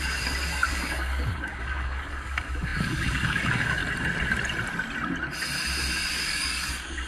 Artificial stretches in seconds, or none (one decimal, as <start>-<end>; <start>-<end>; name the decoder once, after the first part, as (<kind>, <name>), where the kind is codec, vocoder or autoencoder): 0.0-3.8 (codec, DAC); 6.1-7.1